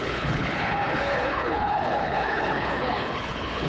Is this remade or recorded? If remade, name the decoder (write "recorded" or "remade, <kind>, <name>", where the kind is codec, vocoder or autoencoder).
remade, codec, HILCodec